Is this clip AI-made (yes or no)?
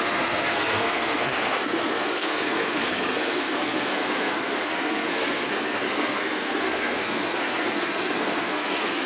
yes